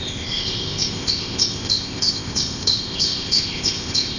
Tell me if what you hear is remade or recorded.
remade